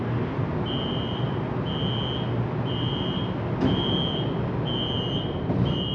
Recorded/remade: recorded